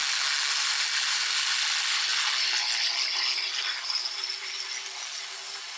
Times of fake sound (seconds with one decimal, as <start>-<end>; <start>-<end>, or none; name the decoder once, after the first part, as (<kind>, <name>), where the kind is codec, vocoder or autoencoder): 0.5-5.8 (vocoder, BigVGAN v2)